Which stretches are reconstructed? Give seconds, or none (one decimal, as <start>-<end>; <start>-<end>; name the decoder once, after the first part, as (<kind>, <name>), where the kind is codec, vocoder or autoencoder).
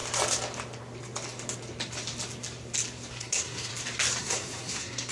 3.1-3.7 (codec, SNAC); 4.2-5.1